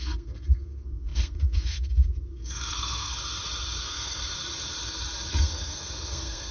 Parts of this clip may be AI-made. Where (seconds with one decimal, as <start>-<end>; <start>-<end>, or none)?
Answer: 0.0-3.1; 3.8-4.2; 5.3-6.5